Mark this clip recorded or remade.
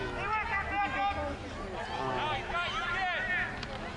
recorded